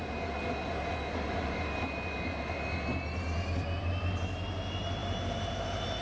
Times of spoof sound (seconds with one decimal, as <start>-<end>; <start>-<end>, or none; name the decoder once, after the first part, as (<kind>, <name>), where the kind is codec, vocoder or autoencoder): 5.0-5.6 (vocoder, BigVGAN v2)